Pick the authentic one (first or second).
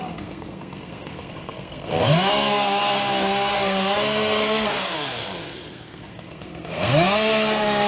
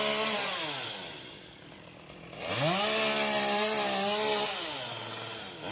second